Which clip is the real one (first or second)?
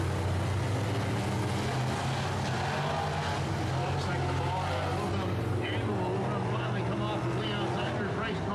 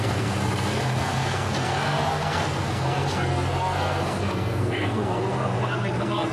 first